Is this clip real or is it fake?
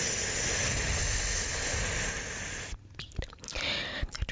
real